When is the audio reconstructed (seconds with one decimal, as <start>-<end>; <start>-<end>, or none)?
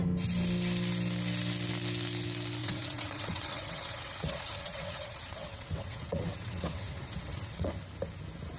2.6-7.7